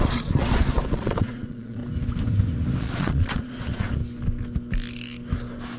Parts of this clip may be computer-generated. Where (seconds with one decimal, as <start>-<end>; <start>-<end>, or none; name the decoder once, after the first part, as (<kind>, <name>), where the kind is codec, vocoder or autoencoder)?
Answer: 0.0-1.8 (vocoder, Vocos); 2.8-4.0